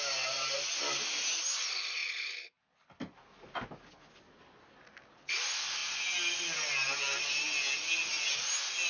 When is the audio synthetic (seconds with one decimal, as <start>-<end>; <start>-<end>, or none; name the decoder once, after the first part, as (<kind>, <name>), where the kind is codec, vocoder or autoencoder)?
none